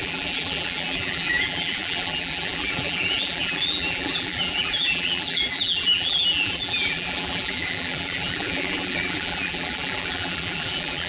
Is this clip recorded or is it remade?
remade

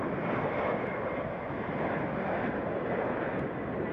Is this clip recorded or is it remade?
recorded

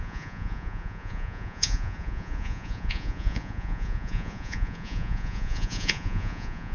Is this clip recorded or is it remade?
remade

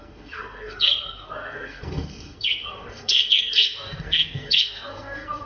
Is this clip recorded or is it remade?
remade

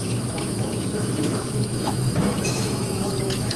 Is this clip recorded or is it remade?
remade